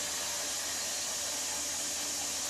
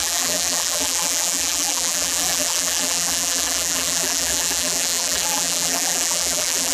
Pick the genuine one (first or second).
first